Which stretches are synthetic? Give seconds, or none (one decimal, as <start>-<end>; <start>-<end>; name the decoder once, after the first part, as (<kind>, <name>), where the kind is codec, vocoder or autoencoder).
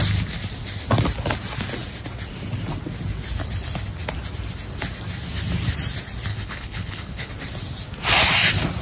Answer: 6.3-7.3 (codec, HILCodec)